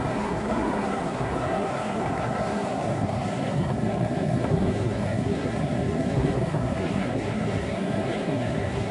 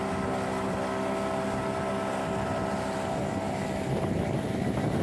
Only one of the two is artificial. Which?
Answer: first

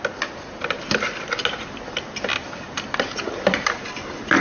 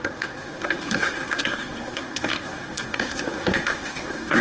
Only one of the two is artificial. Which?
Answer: second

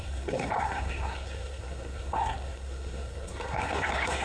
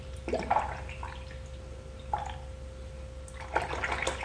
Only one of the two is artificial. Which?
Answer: first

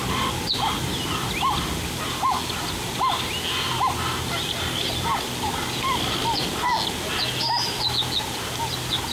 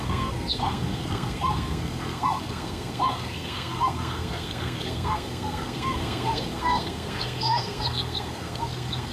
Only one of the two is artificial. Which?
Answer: second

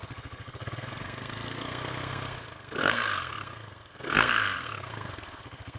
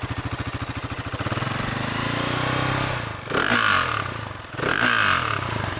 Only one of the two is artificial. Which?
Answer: first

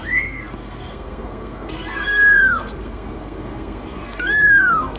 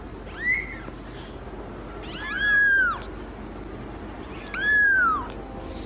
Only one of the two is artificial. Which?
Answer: first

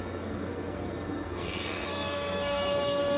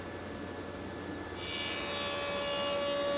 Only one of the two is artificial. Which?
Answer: first